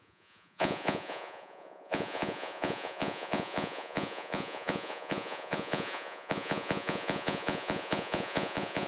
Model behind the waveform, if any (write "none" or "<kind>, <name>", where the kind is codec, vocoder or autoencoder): vocoder, Vocos